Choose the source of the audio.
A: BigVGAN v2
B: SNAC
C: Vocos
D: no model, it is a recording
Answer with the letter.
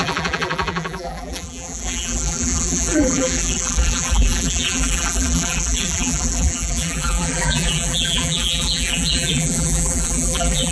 A